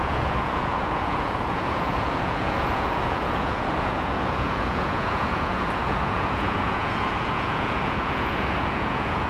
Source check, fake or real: fake